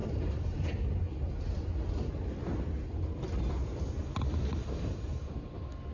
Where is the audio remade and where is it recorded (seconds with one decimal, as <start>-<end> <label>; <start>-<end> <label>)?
0.0-0.7 remade; 0.7-4.5 recorded; 4.5-5.3 remade; 5.3-5.9 recorded